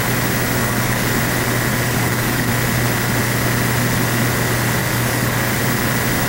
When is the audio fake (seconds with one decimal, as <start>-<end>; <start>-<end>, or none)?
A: 0.6-1.1; 1.7-2.5; 4.8-5.6